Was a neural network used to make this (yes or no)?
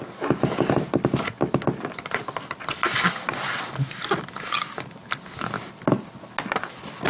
no